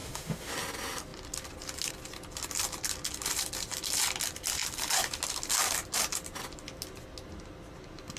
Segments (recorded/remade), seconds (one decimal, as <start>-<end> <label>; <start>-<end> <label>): 0.0-0.5 remade; 0.5-8.2 recorded

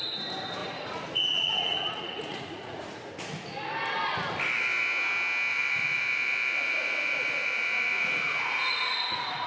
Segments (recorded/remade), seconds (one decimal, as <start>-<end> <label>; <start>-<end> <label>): 0.0-0.6 recorded; 0.6-3.2 remade; 3.2-5.5 recorded; 5.5-9.5 remade

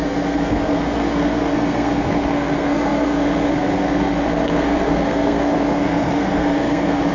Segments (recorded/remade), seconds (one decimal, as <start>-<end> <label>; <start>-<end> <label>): 0.0-7.1 remade

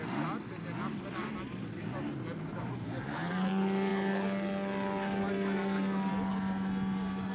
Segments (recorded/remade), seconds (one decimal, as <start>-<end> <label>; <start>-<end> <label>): 0.0-7.3 recorded

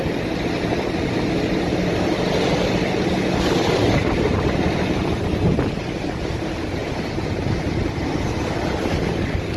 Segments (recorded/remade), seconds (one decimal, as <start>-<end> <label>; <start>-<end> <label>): 0.0-9.6 recorded

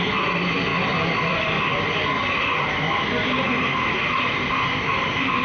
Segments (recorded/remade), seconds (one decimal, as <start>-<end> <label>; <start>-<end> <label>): 0.0-5.4 recorded

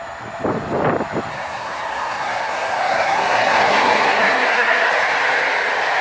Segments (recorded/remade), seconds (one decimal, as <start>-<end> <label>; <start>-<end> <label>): 0.0-1.3 recorded; 1.3-4.9 remade; 4.9-6.0 recorded

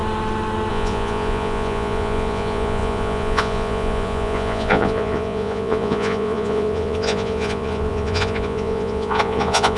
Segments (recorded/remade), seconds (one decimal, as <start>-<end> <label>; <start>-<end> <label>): 0.0-0.7 recorded; 0.7-9.8 remade